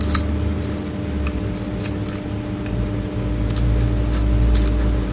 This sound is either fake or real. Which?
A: real